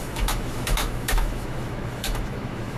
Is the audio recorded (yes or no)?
no